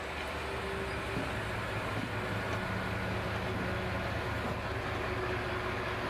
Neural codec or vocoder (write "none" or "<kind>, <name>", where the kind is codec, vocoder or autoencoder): none